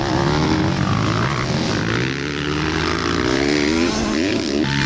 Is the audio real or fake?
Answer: real